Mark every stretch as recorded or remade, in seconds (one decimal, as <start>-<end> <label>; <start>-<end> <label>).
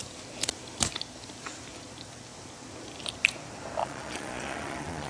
0.0-3.8 recorded; 3.8-5.1 remade